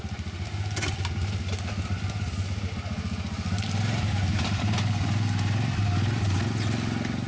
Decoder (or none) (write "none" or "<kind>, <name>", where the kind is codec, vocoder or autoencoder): none